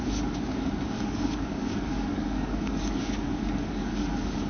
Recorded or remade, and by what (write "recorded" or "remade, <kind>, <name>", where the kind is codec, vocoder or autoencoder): remade, codec, DAC